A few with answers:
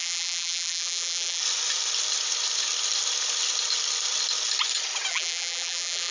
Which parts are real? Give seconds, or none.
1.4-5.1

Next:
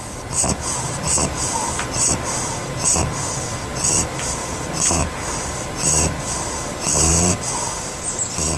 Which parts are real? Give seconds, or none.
0.0-2.1; 7.1-8.6

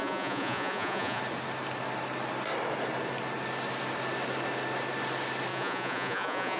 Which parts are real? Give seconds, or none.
1.2-5.5

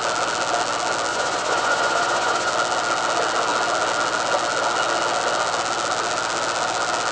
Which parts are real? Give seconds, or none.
0.0-1.1; 2.5-7.1

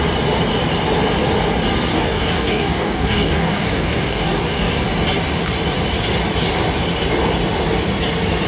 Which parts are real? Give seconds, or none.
0.0-1.9; 4.7-8.5